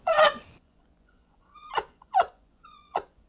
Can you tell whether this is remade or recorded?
remade